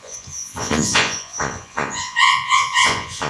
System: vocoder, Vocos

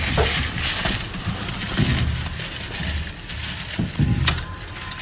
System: none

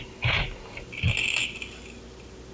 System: none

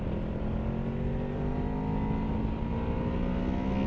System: none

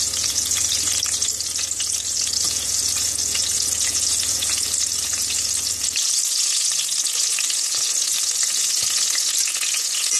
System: vocoder, Vocos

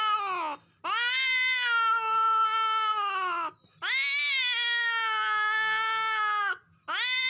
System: none